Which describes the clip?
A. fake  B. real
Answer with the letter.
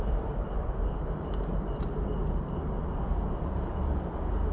A